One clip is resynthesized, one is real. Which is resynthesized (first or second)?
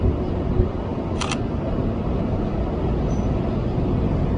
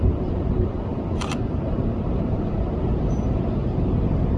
second